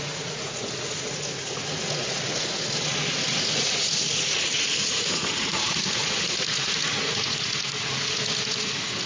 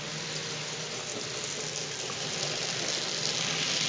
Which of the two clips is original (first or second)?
second